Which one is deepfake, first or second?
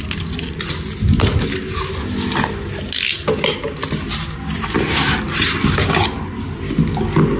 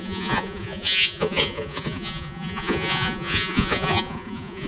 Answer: second